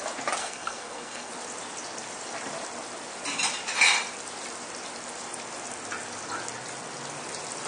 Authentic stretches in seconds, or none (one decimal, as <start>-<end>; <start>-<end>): 0.0-0.4; 1.3-7.7